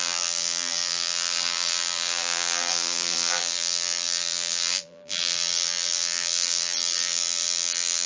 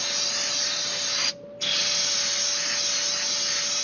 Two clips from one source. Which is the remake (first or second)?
first